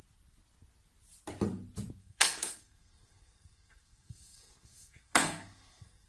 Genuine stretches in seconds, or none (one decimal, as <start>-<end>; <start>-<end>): 0.0-2.0